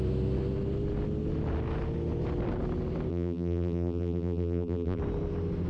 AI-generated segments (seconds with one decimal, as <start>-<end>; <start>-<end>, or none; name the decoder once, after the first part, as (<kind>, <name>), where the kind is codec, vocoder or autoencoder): 3.1-5.0 (vocoder, BigVGAN v2)